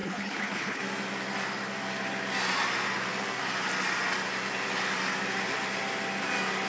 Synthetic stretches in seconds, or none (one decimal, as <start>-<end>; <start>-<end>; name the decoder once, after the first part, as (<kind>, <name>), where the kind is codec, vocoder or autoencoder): 0.0-0.8 (codec, HILCodec)

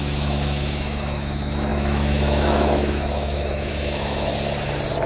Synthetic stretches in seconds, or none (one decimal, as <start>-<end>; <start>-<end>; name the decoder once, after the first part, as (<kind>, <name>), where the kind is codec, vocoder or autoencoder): 0.0-4.3 (autoencoder, DAC-VAE)